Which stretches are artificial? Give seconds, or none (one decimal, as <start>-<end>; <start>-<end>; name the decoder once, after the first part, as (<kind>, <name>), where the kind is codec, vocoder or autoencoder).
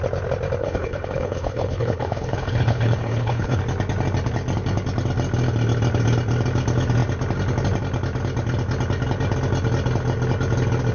0.6-3.6 (codec, HILCodec)